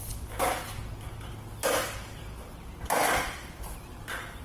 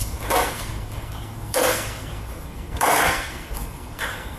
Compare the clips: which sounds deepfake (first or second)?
second